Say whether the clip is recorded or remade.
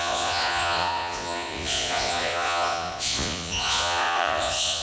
remade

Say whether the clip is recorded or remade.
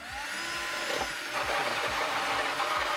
recorded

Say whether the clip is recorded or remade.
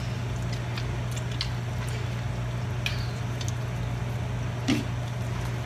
recorded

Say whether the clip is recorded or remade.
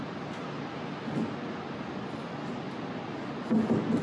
recorded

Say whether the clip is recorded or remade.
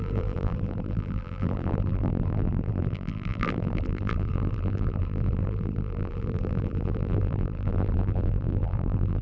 remade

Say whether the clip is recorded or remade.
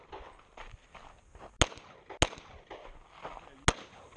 recorded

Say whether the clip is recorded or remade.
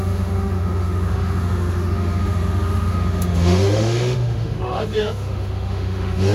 remade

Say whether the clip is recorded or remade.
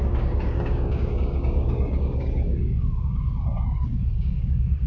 remade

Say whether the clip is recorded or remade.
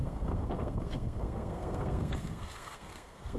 remade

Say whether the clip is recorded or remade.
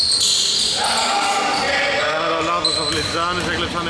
recorded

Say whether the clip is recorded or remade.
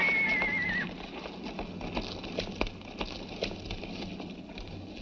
recorded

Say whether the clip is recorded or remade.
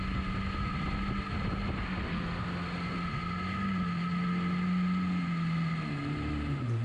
recorded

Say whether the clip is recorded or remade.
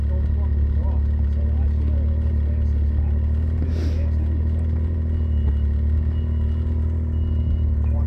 recorded